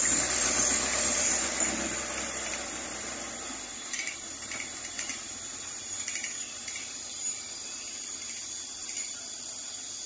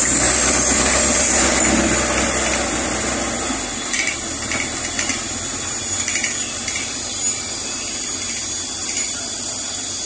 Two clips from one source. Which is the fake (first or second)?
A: first